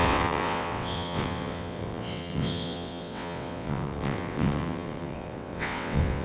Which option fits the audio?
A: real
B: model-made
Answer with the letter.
B